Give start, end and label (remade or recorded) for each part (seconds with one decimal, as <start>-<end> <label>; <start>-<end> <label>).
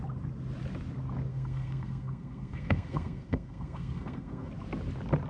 0.0-1.3 recorded; 1.3-4.5 remade; 4.5-5.3 recorded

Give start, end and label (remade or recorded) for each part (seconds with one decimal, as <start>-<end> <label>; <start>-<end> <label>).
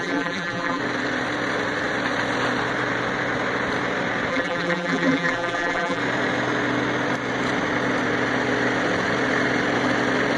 0.0-0.8 remade; 0.8-4.3 recorded; 4.3-6.0 remade; 6.0-10.4 recorded